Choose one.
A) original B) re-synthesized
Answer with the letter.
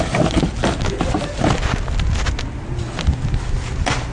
A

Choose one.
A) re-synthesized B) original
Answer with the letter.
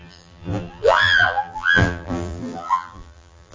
A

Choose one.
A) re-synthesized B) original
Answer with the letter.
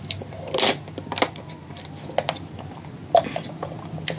B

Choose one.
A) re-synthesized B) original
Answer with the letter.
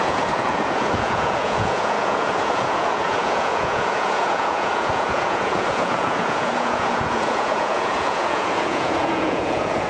A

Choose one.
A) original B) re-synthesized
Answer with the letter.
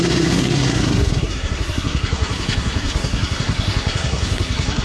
B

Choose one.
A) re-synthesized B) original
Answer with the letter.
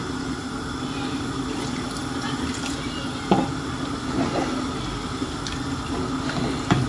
B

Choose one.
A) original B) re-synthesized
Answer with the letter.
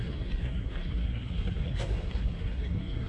B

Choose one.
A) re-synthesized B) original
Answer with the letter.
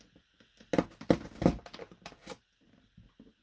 B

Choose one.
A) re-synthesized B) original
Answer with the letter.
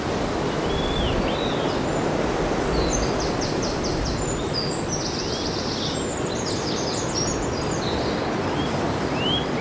B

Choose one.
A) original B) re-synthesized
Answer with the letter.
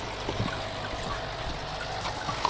A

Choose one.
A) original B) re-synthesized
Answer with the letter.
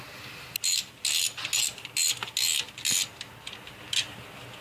A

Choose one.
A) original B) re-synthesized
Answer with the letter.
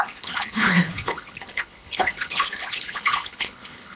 B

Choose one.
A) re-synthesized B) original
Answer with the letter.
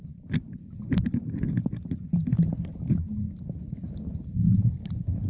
B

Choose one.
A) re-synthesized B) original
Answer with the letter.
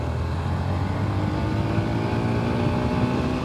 B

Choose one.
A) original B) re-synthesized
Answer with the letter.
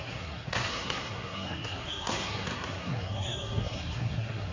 B